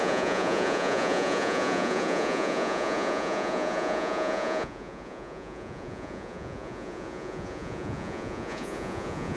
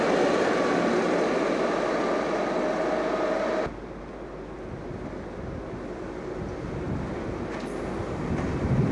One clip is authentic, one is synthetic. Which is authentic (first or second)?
second